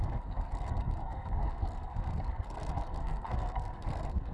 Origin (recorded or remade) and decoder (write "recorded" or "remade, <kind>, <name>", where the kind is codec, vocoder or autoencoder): remade, codec, SNAC